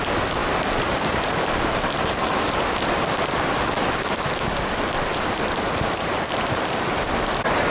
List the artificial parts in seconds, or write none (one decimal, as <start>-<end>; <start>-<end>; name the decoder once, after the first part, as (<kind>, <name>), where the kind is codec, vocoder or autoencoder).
0.4-3.5 (vocoder, BigVGAN v2); 5.1-7.0